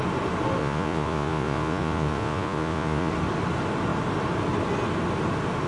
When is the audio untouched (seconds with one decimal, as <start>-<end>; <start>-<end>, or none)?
0.0-0.6; 3.1-5.7